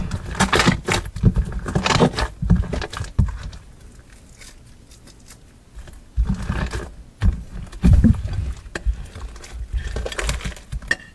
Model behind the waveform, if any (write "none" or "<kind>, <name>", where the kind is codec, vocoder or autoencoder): none